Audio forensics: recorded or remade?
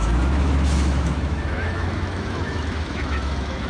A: remade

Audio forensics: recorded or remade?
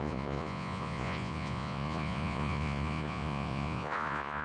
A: remade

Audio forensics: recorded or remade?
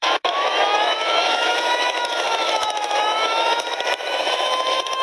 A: remade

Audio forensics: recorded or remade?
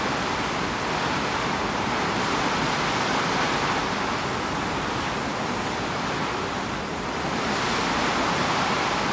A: recorded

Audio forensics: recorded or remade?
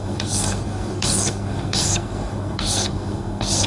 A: remade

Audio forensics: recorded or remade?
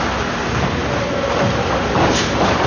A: recorded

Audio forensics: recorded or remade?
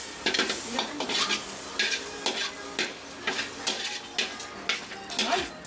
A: recorded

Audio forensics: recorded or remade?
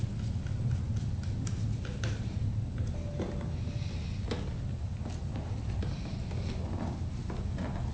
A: recorded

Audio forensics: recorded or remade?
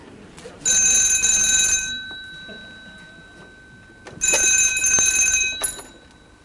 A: recorded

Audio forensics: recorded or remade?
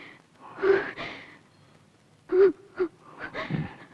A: remade